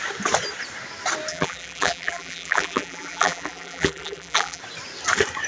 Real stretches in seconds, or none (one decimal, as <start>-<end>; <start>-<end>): 0.0-1.3; 4.6-5.5